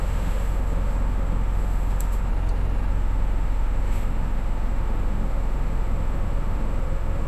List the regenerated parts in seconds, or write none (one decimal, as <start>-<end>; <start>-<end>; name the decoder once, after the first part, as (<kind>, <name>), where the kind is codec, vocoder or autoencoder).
0.0-2.3 (autoencoder, DAC-VAE); 2.9-7.3